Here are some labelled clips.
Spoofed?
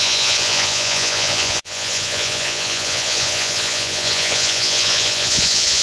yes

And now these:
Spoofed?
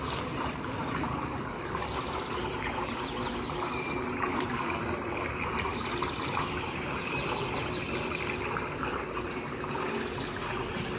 no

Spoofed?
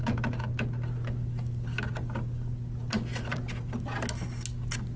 no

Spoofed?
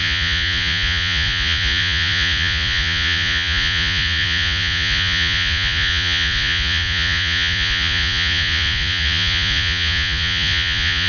yes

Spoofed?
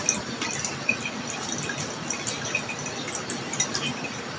no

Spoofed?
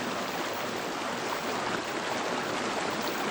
no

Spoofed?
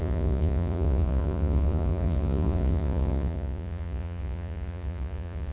yes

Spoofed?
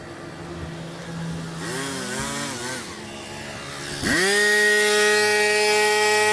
no